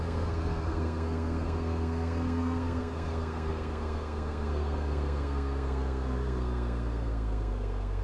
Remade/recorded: remade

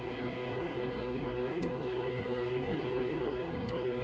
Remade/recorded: remade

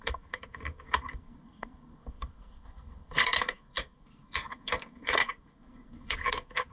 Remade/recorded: remade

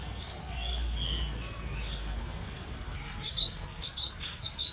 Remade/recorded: remade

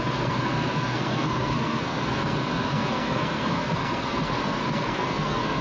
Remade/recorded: remade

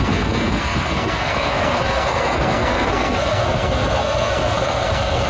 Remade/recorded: remade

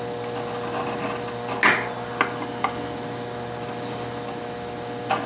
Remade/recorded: recorded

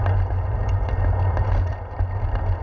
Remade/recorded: recorded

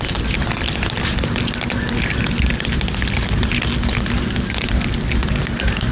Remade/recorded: recorded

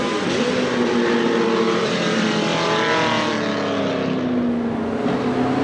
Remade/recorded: recorded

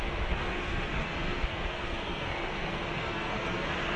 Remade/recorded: remade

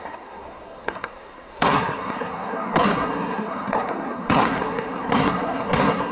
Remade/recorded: remade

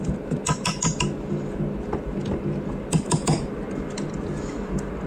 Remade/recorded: recorded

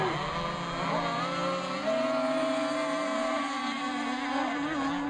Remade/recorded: recorded